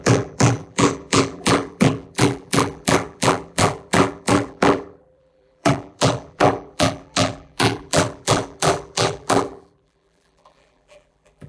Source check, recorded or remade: remade